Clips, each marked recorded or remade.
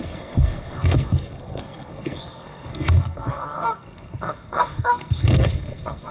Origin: remade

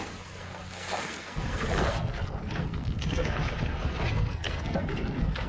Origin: remade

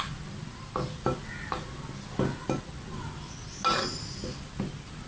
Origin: recorded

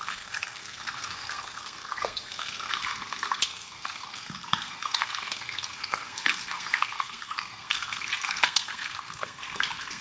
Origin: remade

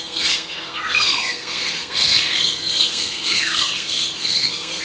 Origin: remade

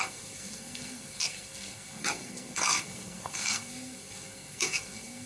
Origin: remade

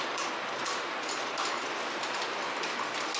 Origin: recorded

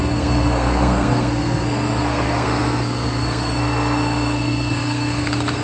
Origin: remade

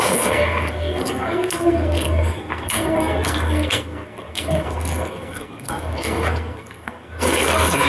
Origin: remade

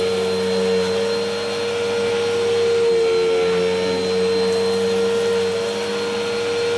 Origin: recorded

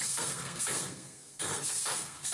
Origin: remade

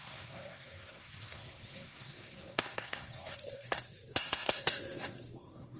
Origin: remade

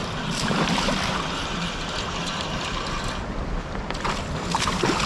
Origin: recorded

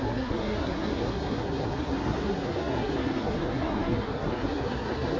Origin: remade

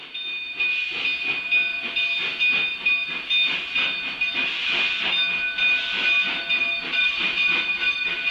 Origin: recorded